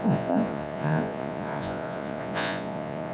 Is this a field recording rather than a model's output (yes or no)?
no